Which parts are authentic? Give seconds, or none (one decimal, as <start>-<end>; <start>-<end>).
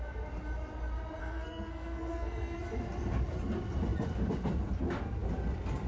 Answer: 0.0-1.2; 2.6-5.9